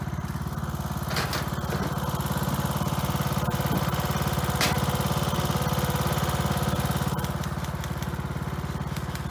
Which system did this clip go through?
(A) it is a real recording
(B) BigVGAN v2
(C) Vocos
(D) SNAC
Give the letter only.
A